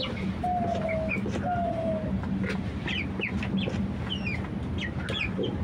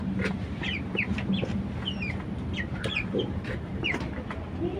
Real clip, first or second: first